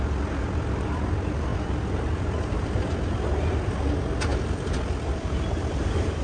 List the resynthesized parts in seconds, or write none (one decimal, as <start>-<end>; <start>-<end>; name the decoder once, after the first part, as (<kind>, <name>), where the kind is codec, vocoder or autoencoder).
1.5-2.9 (vocoder, BigVGAN v2); 4.3-5.8